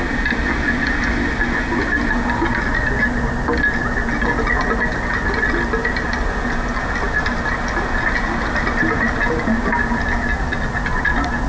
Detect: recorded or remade recorded